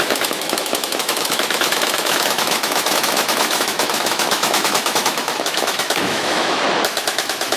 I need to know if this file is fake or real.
fake